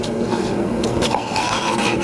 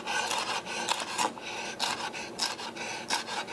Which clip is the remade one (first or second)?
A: first